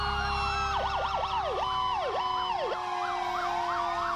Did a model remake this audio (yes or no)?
no